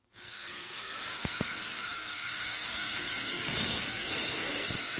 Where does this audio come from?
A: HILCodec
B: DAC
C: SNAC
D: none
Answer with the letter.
C